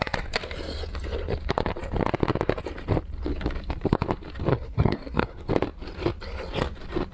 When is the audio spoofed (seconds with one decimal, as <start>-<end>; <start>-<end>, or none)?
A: 4.5-5.5